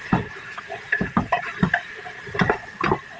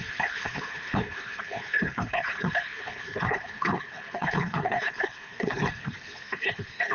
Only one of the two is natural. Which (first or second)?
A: first